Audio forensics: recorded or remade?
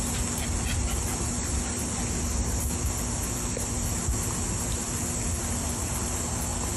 recorded